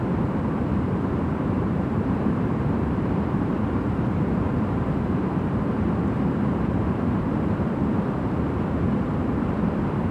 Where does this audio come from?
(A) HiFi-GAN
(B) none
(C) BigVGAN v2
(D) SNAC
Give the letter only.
C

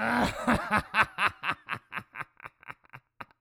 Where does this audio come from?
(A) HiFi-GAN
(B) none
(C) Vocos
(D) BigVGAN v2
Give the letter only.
B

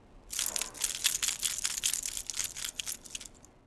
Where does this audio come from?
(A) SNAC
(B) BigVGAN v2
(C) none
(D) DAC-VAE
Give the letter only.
C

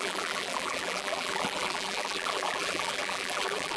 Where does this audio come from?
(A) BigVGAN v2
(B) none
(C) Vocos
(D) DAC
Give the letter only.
A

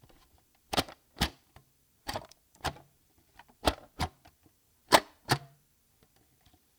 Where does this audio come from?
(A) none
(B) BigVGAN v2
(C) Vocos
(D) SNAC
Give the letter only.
B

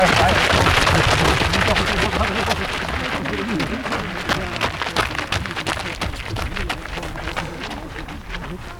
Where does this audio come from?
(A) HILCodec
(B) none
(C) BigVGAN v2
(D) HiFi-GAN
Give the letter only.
B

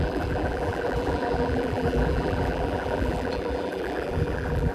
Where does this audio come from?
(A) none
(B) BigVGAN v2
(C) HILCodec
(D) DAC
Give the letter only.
B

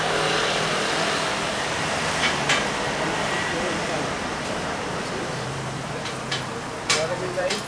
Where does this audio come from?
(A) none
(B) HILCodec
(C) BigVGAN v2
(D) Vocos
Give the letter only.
C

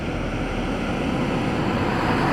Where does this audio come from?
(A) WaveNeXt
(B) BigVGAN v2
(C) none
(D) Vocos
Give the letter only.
C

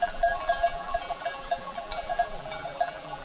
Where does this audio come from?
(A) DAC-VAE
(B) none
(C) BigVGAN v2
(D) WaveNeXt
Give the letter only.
C